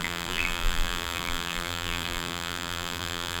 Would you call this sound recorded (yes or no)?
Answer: no